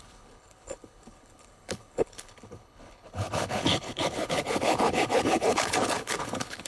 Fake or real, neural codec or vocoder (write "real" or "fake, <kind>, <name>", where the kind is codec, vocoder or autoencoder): fake, codec, HILCodec